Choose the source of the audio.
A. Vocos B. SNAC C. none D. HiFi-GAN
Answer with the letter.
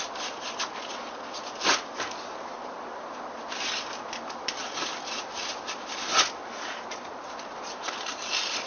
C